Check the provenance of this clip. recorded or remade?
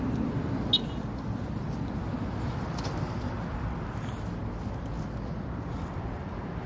recorded